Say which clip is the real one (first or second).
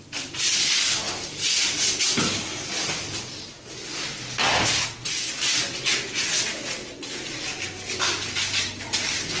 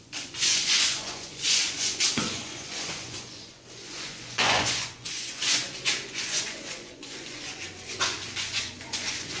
first